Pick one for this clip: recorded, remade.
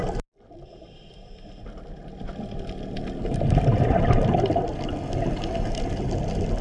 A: recorded